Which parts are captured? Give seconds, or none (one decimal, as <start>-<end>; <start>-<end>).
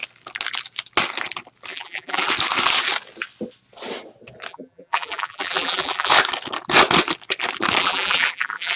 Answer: 0.0-1.7; 2.3-4.5; 6.1-7.8